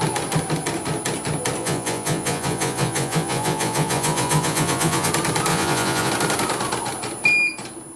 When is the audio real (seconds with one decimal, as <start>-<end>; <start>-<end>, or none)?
0.0-1.6; 5.1-5.5; 6.1-8.0